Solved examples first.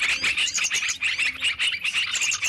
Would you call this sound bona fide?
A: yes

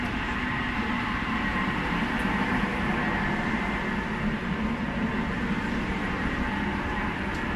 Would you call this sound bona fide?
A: no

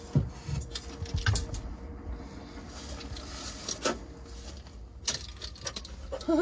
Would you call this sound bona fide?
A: yes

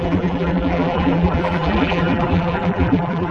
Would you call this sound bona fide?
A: no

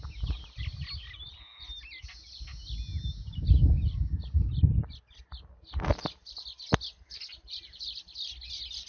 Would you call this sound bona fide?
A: yes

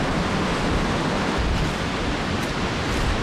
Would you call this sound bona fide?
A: yes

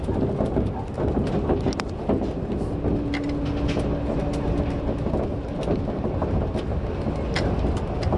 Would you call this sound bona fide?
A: yes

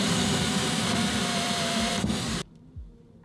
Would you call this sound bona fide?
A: no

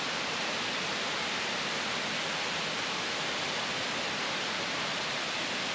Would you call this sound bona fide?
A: yes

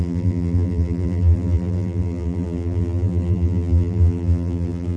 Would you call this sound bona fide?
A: no